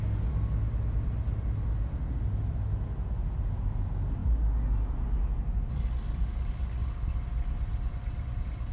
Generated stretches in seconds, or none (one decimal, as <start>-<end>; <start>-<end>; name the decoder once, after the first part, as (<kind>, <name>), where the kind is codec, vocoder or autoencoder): none